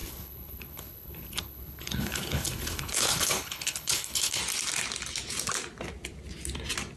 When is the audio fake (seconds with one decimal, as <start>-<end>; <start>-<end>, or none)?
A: 0.0-4.4